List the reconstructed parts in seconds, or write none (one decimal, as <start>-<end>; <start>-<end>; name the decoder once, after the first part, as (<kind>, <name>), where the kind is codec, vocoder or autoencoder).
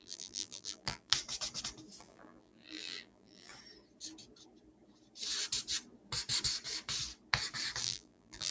0.0-1.1 (vocoder, BigVGAN v2); 2.0-3.5; 7.8-8.5